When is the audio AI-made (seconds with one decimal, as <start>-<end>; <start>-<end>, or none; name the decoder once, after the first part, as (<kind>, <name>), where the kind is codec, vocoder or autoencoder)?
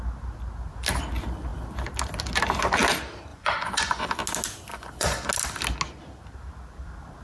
3.3-4.1 (vocoder, Vocos); 4.7-5.3